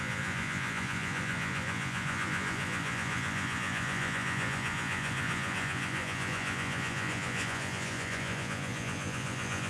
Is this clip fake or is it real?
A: fake